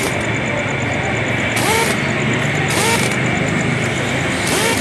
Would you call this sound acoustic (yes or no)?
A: yes